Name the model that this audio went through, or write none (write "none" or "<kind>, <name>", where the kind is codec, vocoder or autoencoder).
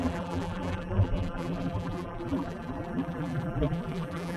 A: vocoder, BigVGAN v2